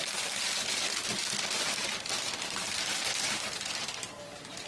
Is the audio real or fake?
fake